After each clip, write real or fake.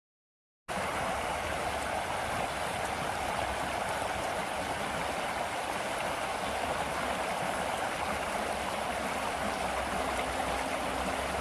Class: real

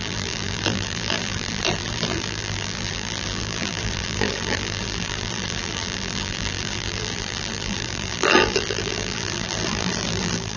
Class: fake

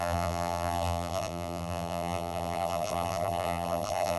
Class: fake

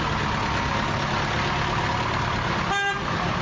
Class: real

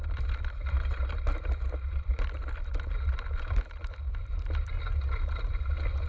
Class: real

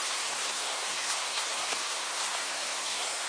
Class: fake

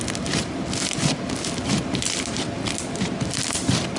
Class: real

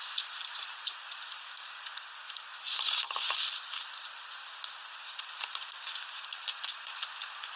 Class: real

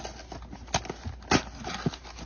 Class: real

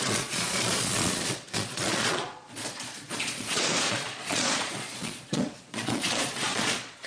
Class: fake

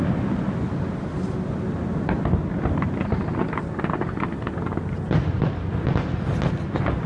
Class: real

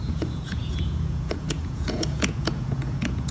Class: fake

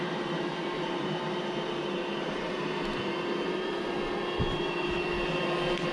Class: fake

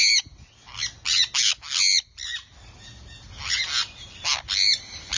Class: real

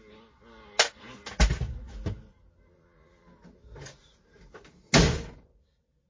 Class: real